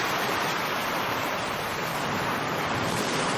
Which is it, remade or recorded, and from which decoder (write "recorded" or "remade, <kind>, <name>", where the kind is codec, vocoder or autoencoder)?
remade, vocoder, BigVGAN v2